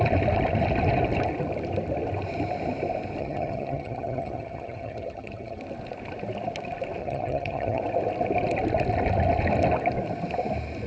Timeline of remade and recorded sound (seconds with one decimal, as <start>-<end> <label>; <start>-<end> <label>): 0.0-3.2 recorded; 3.2-5.6 remade; 5.6-7.0 recorded; 7.0-7.8 remade; 7.8-10.9 recorded